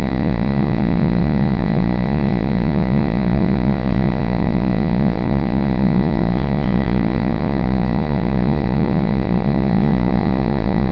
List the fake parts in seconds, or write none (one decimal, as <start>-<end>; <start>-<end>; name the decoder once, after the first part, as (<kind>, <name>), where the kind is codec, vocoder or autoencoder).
0.0-10.9 (vocoder, Vocos)